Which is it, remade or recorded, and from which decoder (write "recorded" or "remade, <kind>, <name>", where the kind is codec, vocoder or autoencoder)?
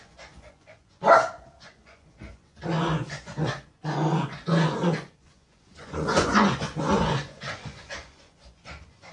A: remade, vocoder, Vocos